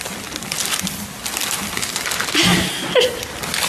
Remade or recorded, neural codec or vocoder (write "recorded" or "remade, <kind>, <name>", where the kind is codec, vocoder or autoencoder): recorded